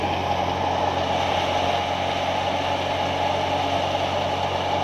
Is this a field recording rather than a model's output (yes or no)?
yes